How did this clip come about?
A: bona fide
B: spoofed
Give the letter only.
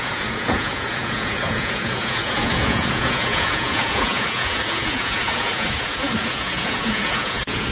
B